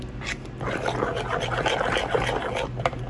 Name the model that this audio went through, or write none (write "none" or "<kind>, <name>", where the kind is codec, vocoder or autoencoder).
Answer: none